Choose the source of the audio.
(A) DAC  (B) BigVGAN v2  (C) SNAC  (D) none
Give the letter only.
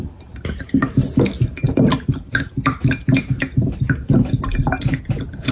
D